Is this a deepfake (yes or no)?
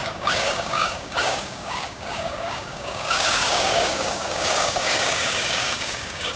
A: yes